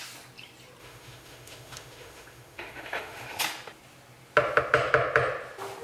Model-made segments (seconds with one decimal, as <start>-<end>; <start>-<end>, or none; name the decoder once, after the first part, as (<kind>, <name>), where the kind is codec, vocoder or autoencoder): 0.8-3.4 (autoencoder, DAC-VAE)